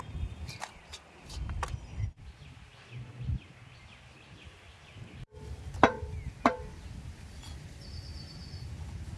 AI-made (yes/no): no